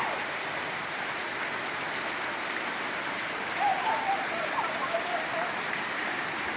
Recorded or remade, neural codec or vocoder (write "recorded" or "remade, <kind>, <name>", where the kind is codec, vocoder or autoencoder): remade, vocoder, BigVGAN v2